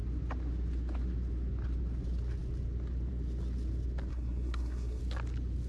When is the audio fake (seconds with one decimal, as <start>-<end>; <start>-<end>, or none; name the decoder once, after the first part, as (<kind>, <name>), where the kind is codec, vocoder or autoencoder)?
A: 4.1-5.0 (codec, SNAC)